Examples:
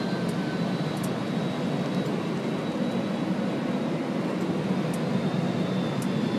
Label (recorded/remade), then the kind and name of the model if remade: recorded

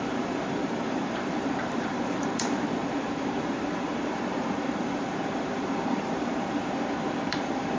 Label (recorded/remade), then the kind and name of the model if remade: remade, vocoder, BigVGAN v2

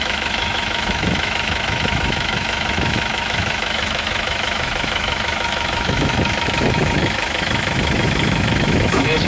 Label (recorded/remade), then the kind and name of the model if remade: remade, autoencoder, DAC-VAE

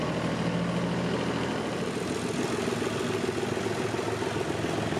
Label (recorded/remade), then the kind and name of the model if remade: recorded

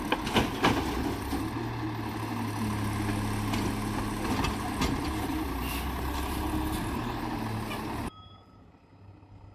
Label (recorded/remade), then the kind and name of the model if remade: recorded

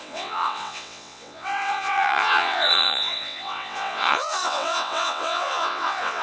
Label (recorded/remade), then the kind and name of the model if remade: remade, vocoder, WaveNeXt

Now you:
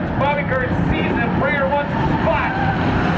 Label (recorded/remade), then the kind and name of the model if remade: recorded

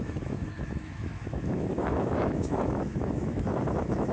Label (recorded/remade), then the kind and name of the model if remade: remade, autoencoder, DAC-VAE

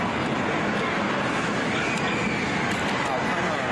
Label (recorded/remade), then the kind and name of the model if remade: recorded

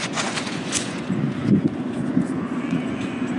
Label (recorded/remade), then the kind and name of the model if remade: remade, vocoder, Vocos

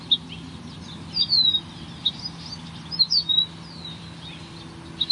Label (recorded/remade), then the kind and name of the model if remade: recorded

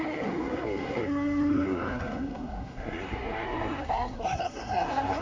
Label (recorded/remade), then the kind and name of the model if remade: remade, codec, SNAC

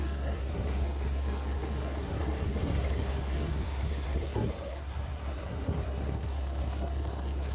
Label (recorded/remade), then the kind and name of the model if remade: remade, codec, SNAC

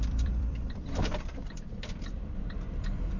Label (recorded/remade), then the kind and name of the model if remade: remade, vocoder, BigVGAN v2